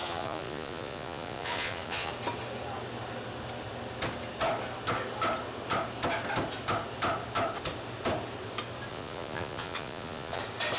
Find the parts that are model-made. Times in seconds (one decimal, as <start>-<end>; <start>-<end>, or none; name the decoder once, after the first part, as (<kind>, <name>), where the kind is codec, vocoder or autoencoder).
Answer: 0.0-2.1 (vocoder, Vocos); 8.9-10.4